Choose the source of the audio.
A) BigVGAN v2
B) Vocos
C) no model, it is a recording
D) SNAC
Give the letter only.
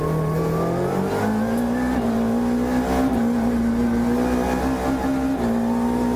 C